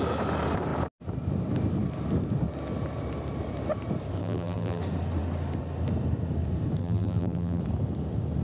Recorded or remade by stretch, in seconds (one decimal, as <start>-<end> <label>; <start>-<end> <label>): 0.0-4.2 recorded; 4.2-4.8 remade; 4.8-6.8 recorded; 6.8-7.6 remade; 7.6-8.4 recorded